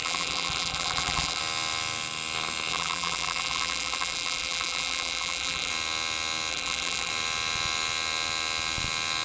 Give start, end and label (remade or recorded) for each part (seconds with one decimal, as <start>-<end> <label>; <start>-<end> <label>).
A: 0.0-1.4 remade; 1.4-2.7 recorded; 2.7-5.7 remade; 5.7-6.5 recorded; 6.5-7.1 remade; 7.1-9.2 recorded